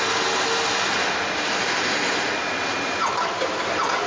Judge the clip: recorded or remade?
recorded